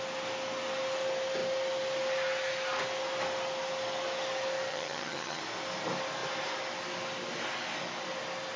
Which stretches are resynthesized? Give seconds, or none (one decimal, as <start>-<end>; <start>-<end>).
4.7-5.4